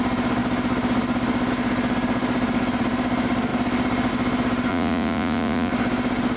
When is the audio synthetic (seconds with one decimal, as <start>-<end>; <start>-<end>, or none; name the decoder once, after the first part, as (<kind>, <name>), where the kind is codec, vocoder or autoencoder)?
4.7-5.7 (vocoder, Vocos)